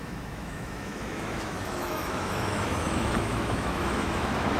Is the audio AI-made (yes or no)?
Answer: yes